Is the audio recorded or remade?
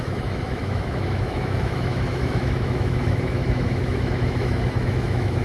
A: remade